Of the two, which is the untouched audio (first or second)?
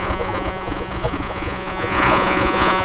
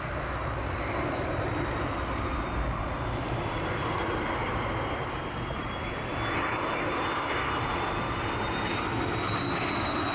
second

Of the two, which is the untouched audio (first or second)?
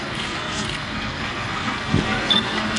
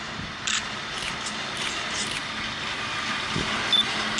second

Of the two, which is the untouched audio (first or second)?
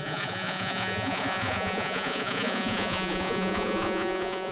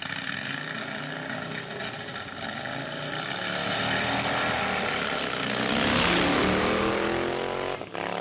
second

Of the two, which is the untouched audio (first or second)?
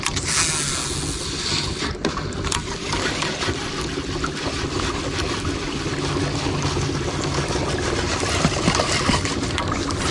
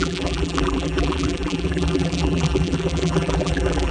first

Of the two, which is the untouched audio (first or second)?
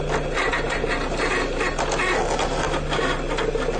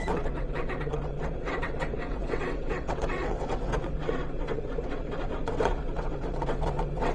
first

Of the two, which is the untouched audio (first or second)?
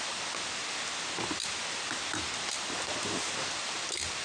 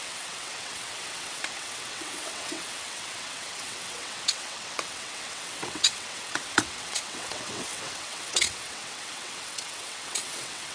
first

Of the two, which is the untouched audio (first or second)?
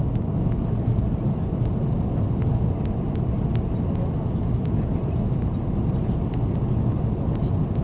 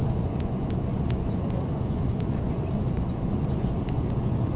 first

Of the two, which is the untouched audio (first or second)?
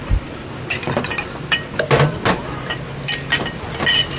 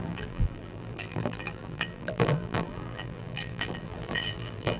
first